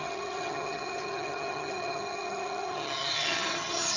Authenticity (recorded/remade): remade